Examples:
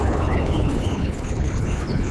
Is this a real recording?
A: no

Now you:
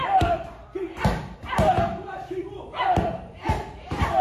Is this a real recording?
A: no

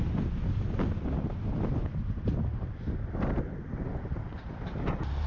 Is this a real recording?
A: yes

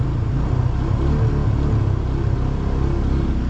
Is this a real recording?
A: yes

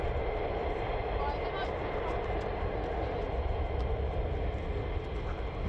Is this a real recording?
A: yes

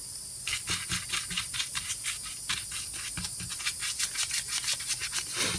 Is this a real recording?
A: yes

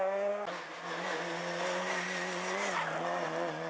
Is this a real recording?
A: yes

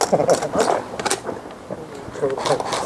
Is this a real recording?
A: yes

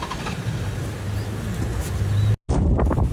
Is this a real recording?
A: yes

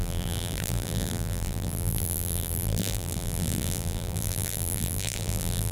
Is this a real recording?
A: no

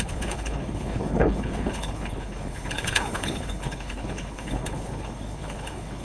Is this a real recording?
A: no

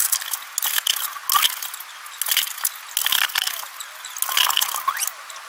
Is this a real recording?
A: yes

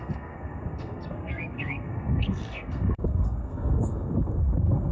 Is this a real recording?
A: no